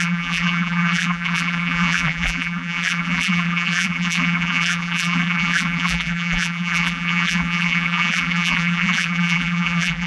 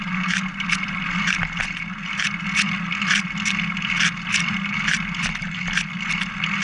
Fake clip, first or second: first